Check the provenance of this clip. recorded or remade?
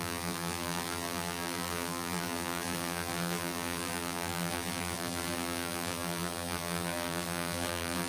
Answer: remade